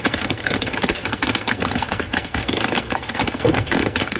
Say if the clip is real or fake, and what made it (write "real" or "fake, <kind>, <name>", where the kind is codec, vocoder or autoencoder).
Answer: fake, codec, SNAC